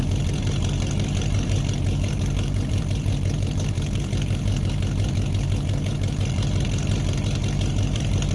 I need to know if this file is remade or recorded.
remade